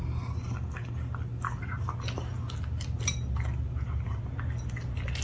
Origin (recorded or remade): recorded